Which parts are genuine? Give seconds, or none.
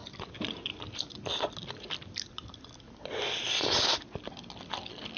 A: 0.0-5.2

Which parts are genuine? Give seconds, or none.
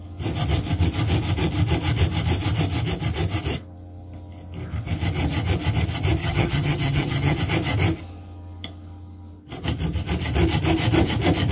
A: 0.0-6.2; 7.4-11.5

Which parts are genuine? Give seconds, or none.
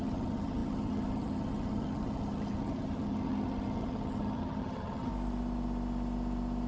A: 5.1-6.7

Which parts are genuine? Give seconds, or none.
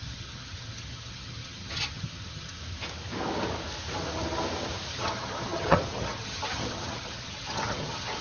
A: 2.6-4.9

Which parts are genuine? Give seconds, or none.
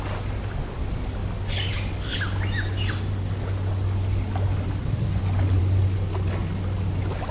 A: 0.0-7.3